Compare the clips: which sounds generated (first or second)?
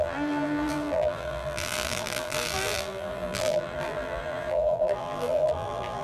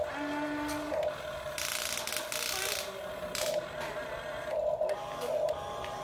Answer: first